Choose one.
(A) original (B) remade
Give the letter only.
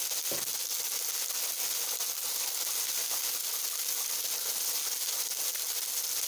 A